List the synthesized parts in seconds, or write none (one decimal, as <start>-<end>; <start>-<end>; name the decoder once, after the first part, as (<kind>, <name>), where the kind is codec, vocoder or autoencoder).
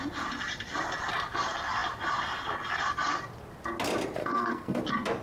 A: 4.2-4.8 (codec, SNAC)